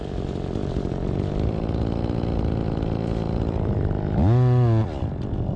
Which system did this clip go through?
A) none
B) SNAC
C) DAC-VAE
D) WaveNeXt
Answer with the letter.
A